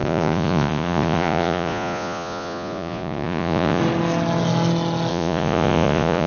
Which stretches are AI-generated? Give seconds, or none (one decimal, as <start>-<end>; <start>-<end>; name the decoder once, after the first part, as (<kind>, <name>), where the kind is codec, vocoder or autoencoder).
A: 0.0-3.8 (vocoder, Vocos); 5.1-6.3